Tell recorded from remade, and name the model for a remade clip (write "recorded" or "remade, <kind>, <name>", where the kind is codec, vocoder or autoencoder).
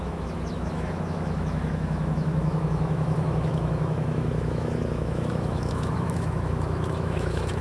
remade, autoencoder, DAC-VAE